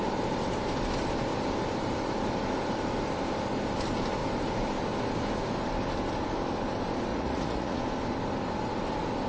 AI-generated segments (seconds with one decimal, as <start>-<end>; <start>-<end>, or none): 7.1-7.8